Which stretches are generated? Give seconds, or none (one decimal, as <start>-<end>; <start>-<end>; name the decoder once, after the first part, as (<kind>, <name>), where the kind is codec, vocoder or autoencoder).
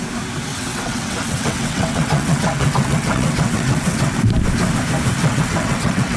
0.5-4.2 (vocoder, WaveNeXt); 5.2-6.2